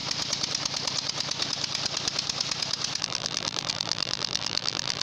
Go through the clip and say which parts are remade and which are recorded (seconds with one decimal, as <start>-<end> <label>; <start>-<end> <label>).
0.0-3.0 recorded; 3.0-5.0 remade